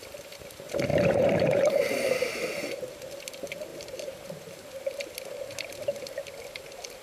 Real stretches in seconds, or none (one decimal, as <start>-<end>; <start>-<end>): 0.0-0.9; 2.4-3.7; 5.1-7.0